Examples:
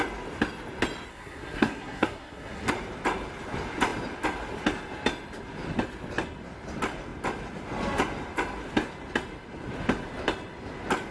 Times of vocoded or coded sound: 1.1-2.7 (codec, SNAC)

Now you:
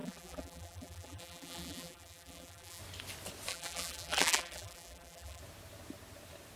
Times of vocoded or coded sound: 0.0-2.8 (vocoder, BigVGAN v2); 3.5-5.4

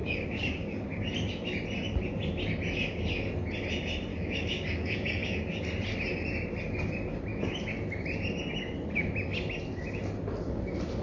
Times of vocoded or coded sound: 0.0-1.1 (codec, DAC); 4.1-5.6

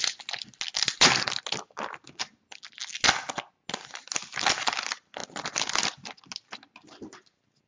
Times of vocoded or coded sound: none

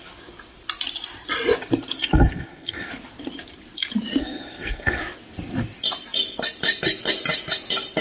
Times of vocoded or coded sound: 2.0-2.9 (codec, SNAC); 4.2-5.0